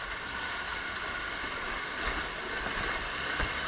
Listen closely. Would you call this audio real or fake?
real